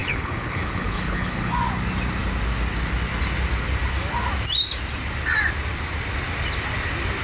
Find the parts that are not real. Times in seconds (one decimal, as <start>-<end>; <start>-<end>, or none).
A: 0.0-1.5

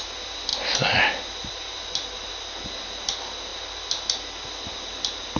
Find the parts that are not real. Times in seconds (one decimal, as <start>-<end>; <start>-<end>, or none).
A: none

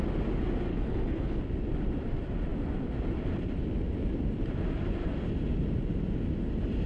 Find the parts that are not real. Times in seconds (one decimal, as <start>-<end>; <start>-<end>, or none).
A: 0.7-1.4

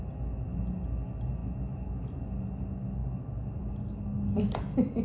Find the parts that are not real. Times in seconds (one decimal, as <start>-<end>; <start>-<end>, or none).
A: none

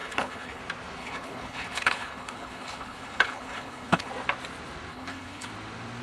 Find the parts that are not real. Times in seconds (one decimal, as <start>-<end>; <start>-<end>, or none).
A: 0.0-0.6; 1.0-4.1; 4.9-5.5

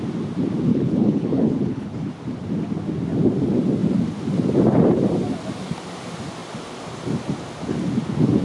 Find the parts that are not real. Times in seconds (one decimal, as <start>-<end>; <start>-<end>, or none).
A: 0.7-2.1

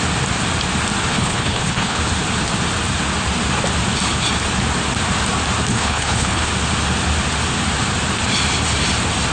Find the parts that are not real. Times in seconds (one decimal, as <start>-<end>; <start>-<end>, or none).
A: 1.1-2.0; 5.7-6.5